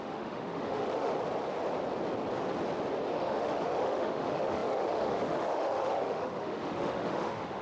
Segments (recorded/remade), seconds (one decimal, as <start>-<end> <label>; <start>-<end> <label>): 0.0-1.1 remade; 1.1-3.1 recorded; 3.1-7.6 remade